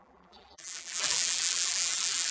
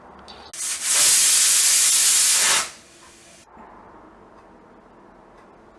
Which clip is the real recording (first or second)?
second